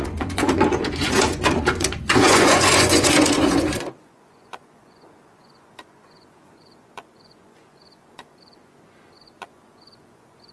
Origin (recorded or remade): remade